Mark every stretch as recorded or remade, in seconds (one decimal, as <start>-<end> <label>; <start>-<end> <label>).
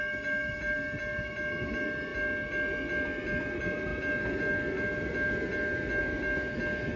0.0-7.0 recorded